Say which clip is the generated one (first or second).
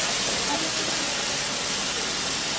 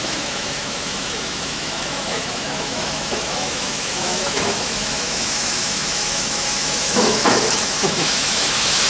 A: second